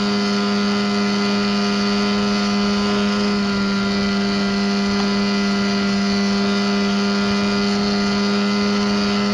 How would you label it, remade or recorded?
recorded